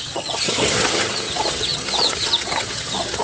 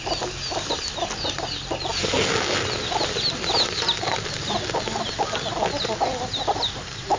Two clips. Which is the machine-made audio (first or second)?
first